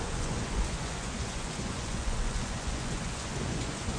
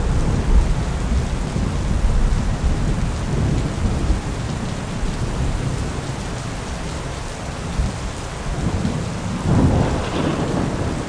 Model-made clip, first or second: first